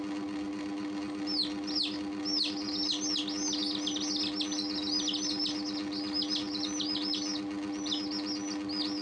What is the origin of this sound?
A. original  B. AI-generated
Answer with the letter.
A